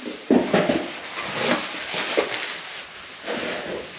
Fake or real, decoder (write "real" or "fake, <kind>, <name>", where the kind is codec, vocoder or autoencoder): real